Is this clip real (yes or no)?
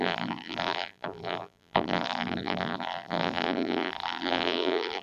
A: no